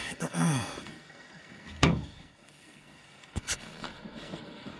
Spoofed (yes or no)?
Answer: yes